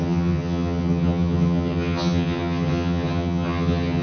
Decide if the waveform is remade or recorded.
remade